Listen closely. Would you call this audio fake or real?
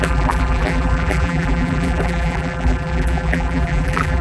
fake